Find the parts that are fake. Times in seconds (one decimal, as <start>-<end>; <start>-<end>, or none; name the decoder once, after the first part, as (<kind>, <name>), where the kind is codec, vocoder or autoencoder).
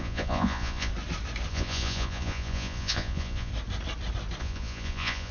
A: 0.0-0.9 (vocoder, Vocos); 1.5-3.5; 4.4-5.3